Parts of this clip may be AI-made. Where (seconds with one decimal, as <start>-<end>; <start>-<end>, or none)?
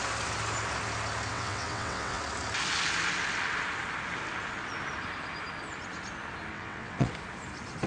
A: 1.3-2.2; 6.5-7.1